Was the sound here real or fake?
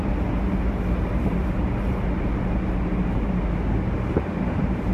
real